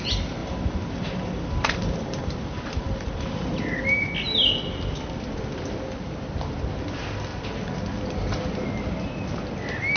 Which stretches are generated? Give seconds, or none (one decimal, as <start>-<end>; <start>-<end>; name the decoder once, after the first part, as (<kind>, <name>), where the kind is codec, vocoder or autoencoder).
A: 0.4-4.0 (vocoder, BigVGAN v2)